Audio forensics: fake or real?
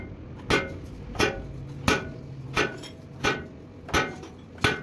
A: real